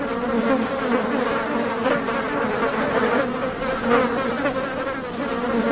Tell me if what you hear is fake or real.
real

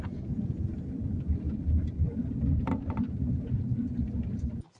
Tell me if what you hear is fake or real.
real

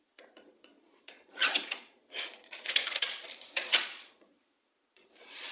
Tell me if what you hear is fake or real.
fake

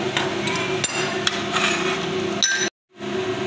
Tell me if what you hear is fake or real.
real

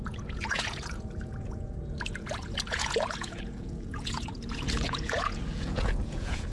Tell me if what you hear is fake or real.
fake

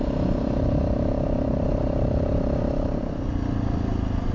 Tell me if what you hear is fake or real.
real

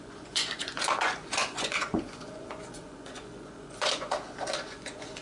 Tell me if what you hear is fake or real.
fake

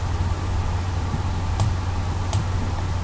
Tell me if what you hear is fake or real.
real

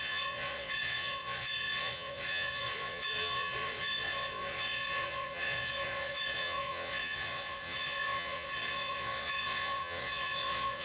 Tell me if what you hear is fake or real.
fake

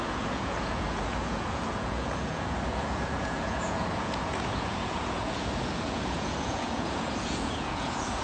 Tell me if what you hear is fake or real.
fake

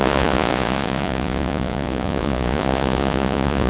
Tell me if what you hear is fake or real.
fake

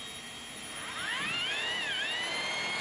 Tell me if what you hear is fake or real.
real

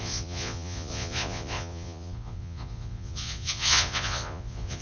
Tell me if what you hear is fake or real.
fake